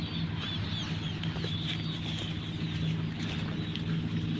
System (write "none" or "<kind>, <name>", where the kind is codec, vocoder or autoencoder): none